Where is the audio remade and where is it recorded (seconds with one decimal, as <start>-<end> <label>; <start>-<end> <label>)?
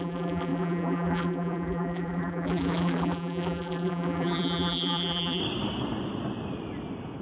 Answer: 0.0-5.4 remade; 5.4-7.2 recorded